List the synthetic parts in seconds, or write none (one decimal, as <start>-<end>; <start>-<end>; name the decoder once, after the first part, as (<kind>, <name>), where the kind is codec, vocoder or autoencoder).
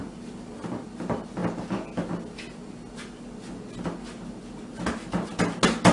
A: none